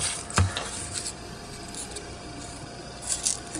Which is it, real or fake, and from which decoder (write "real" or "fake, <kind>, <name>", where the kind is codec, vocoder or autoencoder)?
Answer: real